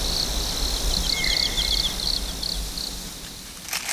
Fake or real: real